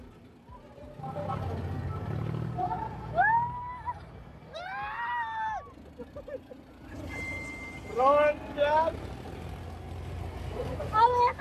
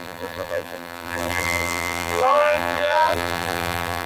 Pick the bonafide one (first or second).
first